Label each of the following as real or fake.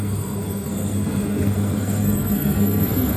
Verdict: fake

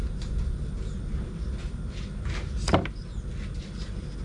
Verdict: real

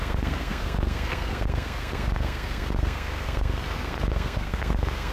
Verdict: fake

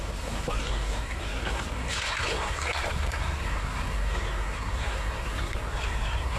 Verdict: fake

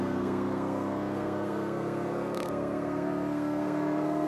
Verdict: fake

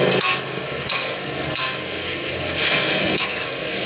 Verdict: fake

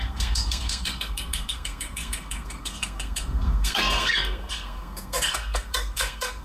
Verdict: fake